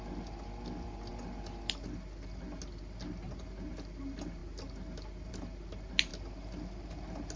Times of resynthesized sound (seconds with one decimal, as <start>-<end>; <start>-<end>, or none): none